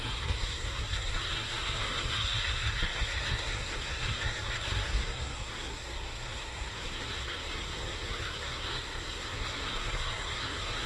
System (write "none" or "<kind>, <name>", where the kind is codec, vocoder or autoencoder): codec, SNAC